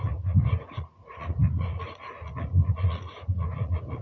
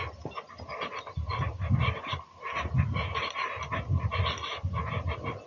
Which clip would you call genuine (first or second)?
second